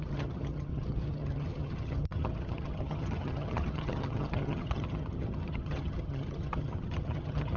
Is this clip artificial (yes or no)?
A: yes